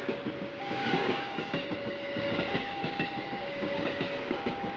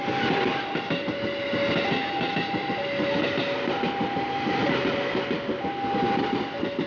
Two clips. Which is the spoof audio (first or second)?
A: first